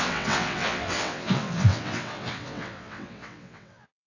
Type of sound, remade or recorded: remade